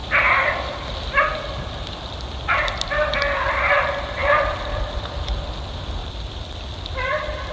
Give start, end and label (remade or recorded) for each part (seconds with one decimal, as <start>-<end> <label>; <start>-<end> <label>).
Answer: 0.0-0.5 remade; 0.5-4.2 recorded; 4.2-4.8 remade; 4.8-6.0 recorded; 6.0-6.6 remade; 6.6-7.5 recorded